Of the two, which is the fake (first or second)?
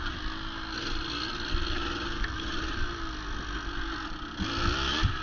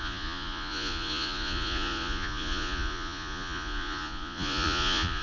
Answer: second